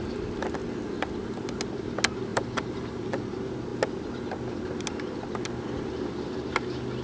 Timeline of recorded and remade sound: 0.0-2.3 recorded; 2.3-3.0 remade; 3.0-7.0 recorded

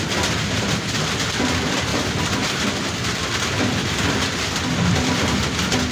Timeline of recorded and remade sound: 0.0-5.9 recorded

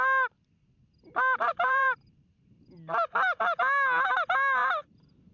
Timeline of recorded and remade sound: 0.0-1.5 recorded; 1.5-2.2 remade; 2.2-4.6 recorded; 4.6-5.3 remade

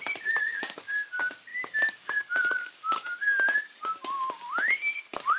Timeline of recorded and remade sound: 0.0-5.4 remade